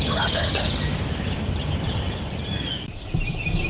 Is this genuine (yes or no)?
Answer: yes